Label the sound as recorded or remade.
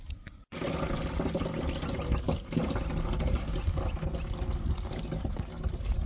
recorded